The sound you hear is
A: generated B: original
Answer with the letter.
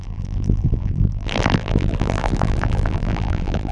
A